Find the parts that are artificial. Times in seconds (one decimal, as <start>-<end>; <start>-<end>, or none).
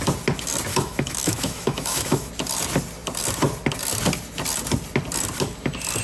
0.7-2.3